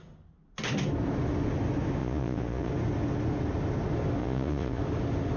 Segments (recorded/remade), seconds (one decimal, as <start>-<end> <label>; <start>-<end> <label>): 0.0-2.0 recorded; 2.0-2.7 remade; 2.7-4.2 recorded; 4.2-4.8 remade; 4.8-5.4 recorded